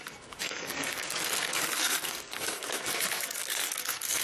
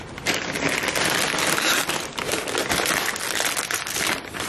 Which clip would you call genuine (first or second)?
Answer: second